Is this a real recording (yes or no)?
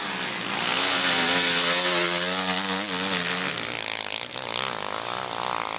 yes